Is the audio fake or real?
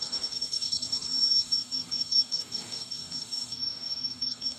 fake